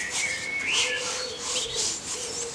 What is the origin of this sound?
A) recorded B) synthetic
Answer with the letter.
A